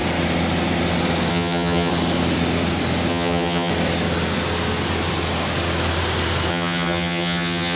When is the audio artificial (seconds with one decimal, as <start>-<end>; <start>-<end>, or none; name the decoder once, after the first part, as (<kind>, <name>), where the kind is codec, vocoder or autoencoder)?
1.3-1.9 (vocoder, HiFi-GAN); 3.1-3.7; 6.5-7.8